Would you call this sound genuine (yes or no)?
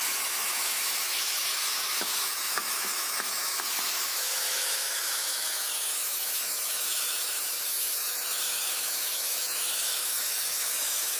no